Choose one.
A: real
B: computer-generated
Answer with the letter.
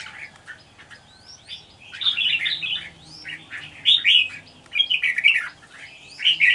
A